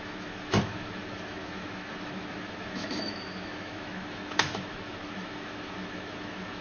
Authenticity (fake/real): fake